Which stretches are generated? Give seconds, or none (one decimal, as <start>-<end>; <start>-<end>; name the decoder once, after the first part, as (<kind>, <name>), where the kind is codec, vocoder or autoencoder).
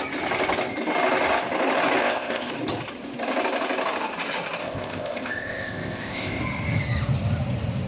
2.0-2.5 (codec, ZipCodec); 4.6-6.4